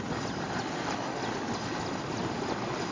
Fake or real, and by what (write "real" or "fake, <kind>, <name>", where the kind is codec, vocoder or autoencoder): real